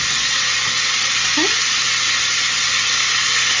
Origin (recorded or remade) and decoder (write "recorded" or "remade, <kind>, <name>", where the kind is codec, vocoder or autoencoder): recorded